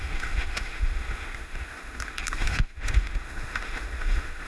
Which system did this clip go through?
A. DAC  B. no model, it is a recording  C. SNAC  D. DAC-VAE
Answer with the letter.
D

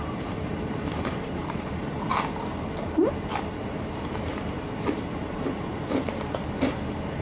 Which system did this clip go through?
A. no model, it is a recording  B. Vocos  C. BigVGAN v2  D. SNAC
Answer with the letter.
C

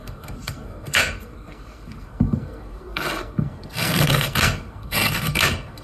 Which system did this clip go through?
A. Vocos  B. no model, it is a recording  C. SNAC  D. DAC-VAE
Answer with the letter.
C